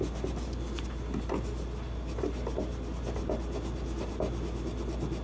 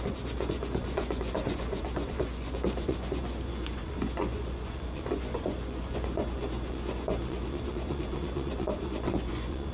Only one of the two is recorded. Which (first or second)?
first